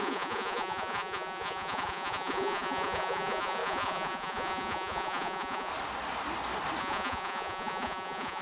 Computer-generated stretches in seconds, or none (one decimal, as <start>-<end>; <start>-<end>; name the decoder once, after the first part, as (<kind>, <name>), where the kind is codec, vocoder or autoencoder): 0.0-5.7 (vocoder, Vocos); 6.8-8.4